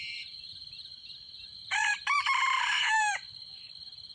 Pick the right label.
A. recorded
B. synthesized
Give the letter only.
B